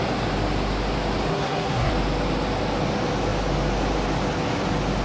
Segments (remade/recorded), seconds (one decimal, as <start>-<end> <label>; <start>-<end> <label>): 0.0-1.3 recorded; 1.3-1.9 remade; 1.9-5.0 recorded